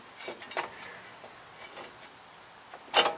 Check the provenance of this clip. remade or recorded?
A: recorded